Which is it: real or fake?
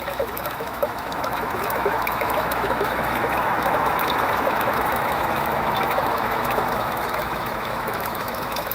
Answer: fake